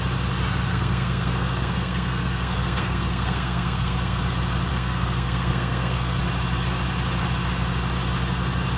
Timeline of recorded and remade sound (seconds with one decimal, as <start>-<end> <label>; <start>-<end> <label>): 0.0-0.7 recorded; 0.7-4.2 remade; 4.2-4.7 recorded; 4.7-6.2 remade; 6.2-8.8 recorded